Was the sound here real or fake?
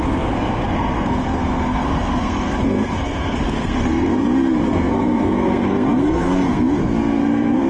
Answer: fake